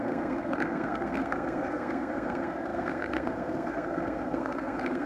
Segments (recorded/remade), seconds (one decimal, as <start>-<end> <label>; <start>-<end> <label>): 0.0-5.1 remade